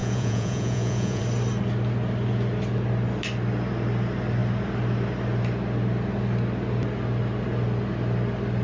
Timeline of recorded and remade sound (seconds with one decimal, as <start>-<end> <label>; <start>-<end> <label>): 0.0-1.2 remade; 1.2-8.6 recorded